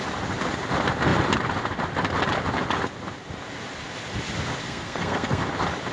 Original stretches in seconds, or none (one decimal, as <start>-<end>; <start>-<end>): 0.0-4.6; 5.4-5.9